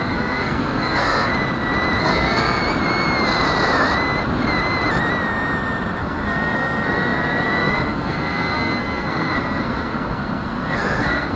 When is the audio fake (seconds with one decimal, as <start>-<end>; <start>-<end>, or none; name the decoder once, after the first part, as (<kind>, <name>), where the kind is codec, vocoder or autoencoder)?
0.0-1.3 (codec, SNAC); 2.0-2.6; 6.0-11.4